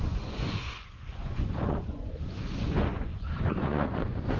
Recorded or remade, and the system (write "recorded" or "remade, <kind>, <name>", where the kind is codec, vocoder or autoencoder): remade, vocoder, Vocos